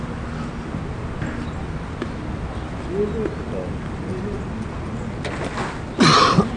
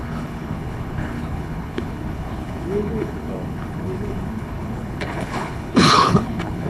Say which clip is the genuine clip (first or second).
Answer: first